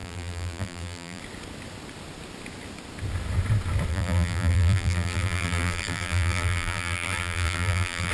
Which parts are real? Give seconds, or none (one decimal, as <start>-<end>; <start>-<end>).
1.2-3.9

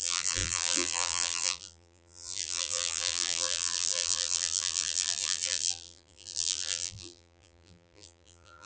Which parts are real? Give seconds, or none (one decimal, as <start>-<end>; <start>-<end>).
none

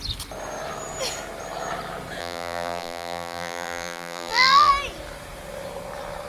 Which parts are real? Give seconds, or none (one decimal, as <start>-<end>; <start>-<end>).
0.0-2.2; 4.7-6.3

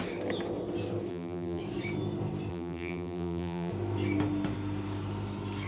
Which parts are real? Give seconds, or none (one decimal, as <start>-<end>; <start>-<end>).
0.0-1.1; 1.6-2.5; 3.7-5.7

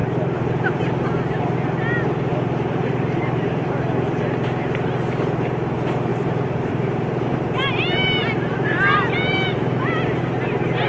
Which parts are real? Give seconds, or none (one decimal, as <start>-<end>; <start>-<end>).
0.8-2.3; 3.7-6.1; 9.8-10.9

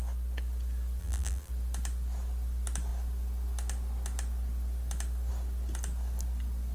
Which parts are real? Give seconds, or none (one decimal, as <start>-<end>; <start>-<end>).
0.0-1.0; 1.5-6.7

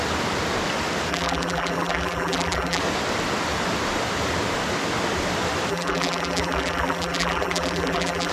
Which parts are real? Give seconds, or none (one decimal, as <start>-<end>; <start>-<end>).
0.0-1.1; 2.8-5.7

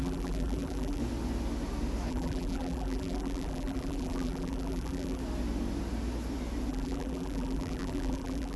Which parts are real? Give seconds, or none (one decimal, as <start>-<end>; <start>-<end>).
1.0-2.1; 5.2-6.7